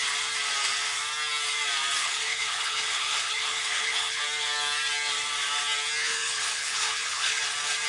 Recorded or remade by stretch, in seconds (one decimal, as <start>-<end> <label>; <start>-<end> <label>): 0.0-2.0 recorded; 2.0-4.2 remade; 4.2-6.0 recorded; 6.0-7.4 remade; 7.4-7.9 recorded